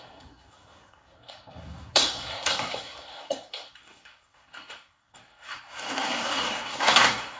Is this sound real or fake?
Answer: fake